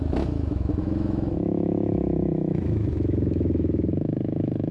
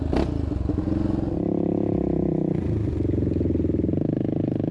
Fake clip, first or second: first